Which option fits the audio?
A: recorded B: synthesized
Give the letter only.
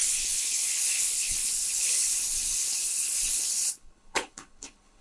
B